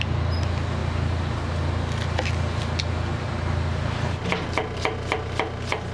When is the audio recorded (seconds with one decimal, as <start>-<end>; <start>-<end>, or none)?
0.0-5.9